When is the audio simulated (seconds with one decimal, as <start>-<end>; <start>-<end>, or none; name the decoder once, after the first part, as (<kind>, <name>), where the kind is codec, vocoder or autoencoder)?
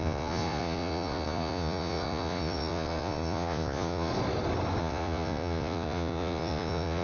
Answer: 0.0-4.1 (vocoder, Vocos); 4.8-7.0